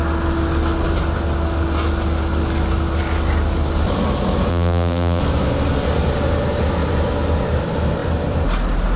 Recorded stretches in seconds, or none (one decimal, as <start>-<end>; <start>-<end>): 0.0-4.5; 5.2-9.0